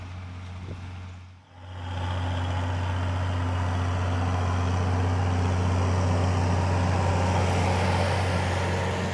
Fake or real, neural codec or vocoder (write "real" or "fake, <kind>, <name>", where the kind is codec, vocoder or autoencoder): real